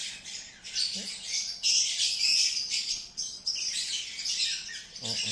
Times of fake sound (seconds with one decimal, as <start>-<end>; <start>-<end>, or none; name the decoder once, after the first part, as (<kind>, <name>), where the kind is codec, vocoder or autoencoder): 0.0-0.8 (vocoder, Vocos); 2.3-3.9

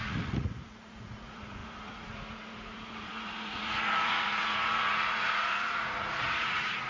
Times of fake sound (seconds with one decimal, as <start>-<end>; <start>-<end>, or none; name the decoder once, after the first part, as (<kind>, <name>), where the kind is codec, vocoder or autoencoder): 0.0-6.9 (vocoder, Vocos)

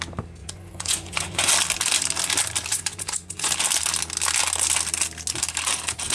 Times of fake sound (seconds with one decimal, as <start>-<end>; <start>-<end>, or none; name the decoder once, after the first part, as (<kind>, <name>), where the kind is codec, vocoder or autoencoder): 0.4-1.5 (vocoder, Vocos); 2.7-3.5

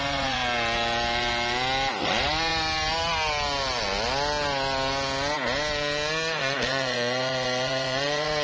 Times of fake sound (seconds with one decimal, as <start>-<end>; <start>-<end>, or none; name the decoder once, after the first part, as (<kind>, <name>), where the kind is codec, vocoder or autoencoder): 0.0-0.4 (vocoder, Vocos); 2.0-2.5; 6.4-8.4

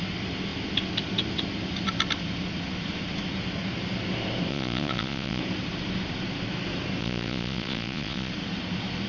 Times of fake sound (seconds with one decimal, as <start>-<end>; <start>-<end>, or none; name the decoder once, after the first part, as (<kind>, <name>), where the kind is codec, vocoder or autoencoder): 4.5-5.4 (vocoder, Vocos); 7.0-8.3